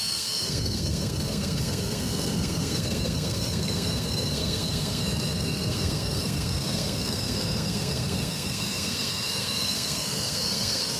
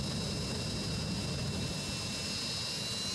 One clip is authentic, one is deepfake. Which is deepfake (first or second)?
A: first